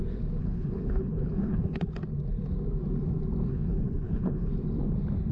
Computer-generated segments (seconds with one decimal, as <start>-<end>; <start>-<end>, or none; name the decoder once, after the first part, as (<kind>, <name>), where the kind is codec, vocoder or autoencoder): 0.4-1.9 (codec, HILCodec); 3.5-4.5